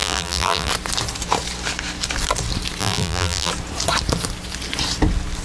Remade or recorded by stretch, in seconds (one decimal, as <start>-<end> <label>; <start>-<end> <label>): 0.0-0.7 remade; 0.7-2.8 recorded; 2.8-3.5 remade; 3.5-5.4 recorded

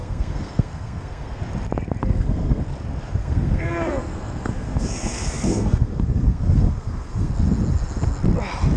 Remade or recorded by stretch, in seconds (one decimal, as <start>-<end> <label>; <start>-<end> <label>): 0.0-1.4 remade; 1.4-2.0 recorded; 2.0-2.6 remade; 2.6-3.2 recorded; 3.2-7.3 remade; 7.3-8.8 recorded

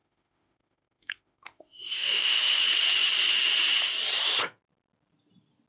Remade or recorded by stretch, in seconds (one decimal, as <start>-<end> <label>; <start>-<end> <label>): 0.0-2.6 remade; 2.6-5.7 recorded

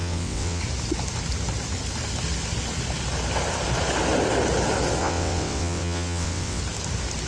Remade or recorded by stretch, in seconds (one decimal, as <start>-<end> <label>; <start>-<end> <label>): 0.0-0.6 remade; 0.6-5.0 recorded; 5.0-6.6 remade; 6.6-7.3 recorded

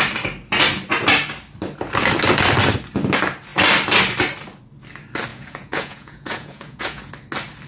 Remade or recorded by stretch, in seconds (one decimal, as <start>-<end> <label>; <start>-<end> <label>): 0.0-5.3 recorded; 5.3-7.1 remade; 7.1-7.7 recorded